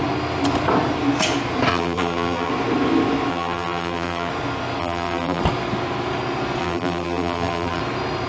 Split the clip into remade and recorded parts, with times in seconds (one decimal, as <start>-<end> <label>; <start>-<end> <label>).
0.0-1.7 recorded; 1.7-2.5 remade; 2.5-3.3 recorded; 3.3-4.3 remade; 4.3-4.8 recorded; 4.8-5.4 remade; 5.4-6.6 recorded; 6.6-7.8 remade; 7.8-8.3 recorded